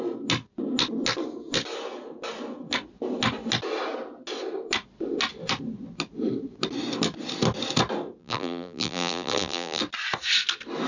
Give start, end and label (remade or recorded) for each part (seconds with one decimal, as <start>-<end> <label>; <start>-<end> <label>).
0.0-8.2 recorded; 8.2-9.8 remade; 9.8-10.9 recorded